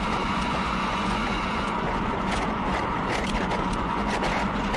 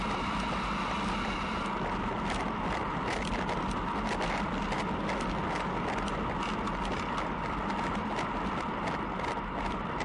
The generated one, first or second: first